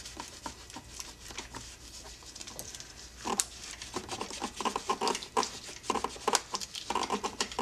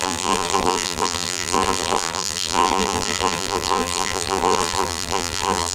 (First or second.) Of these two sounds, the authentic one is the first